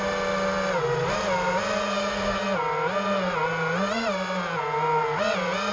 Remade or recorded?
recorded